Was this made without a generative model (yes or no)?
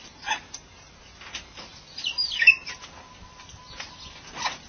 yes